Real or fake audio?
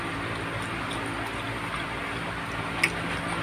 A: real